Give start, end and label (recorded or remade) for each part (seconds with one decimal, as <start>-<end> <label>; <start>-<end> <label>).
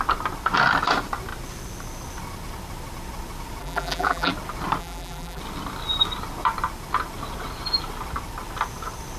0.0-3.6 recorded; 3.6-4.3 remade; 4.3-4.8 recorded; 4.8-5.4 remade; 5.4-9.2 recorded